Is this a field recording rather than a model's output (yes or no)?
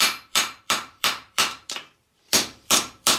no